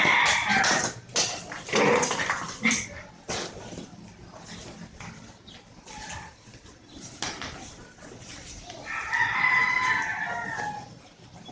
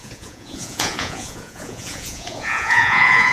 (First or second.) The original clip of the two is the first